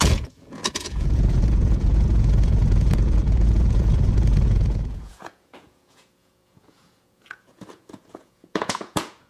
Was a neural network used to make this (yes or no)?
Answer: yes